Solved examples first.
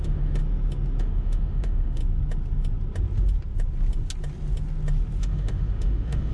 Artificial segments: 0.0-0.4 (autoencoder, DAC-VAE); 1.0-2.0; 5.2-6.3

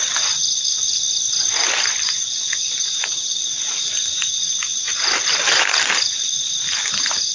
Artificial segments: none

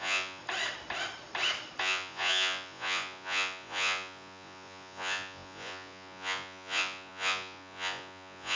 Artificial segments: 0.0-0.4 (vocoder, Vocos); 1.8-8.6

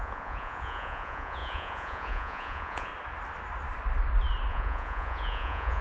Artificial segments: 0.0-2.9 (vocoder, Vocos); 4.5-5.8

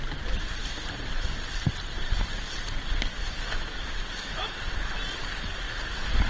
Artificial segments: 3.1-4.6 (autoencoder, DAC-VAE)

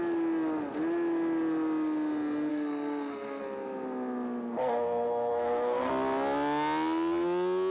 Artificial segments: 2.5-3.4 (codec, SNAC); 4.6-5.9

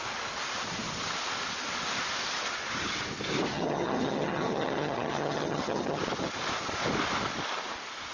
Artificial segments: 3.5-6.0 (vocoder, HiFi-GAN)

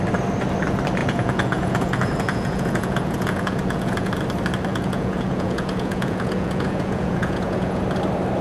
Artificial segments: 1.0-4.1 (vocoder, Vocos); 4.7-7.8